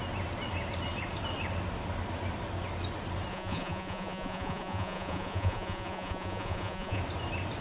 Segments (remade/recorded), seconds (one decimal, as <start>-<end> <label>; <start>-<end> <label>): 0.0-3.3 recorded; 3.3-7.0 remade; 7.0-7.6 recorded